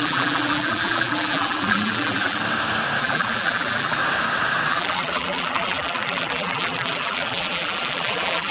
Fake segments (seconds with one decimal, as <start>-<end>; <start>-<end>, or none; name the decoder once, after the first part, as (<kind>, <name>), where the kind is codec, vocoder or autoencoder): 0.0-2.4 (vocoder, BigVGAN v2); 3.0-4.0; 4.7-8.5